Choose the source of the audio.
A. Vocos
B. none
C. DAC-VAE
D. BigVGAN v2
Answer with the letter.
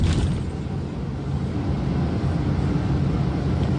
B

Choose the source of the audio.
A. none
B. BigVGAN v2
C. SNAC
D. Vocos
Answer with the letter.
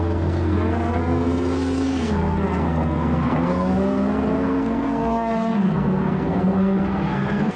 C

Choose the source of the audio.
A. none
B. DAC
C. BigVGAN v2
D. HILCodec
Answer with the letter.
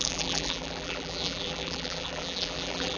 C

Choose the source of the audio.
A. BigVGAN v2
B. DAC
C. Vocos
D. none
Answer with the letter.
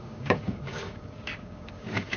B